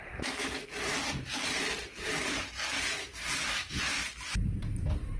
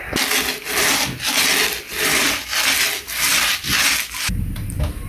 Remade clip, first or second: first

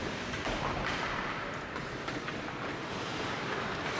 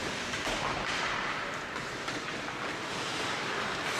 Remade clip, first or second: first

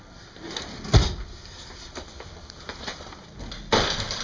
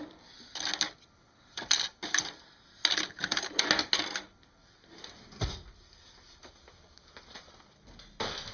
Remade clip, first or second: first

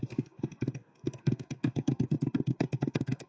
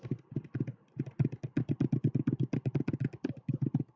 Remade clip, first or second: first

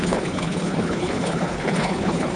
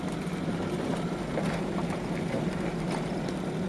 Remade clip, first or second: first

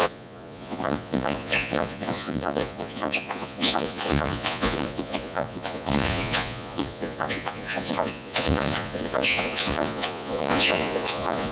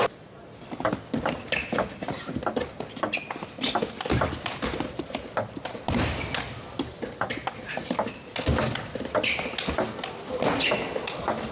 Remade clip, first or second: first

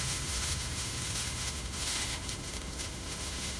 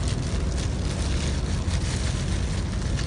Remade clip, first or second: first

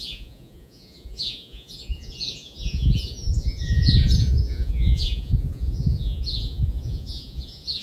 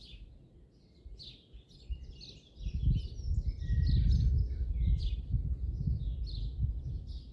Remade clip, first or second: first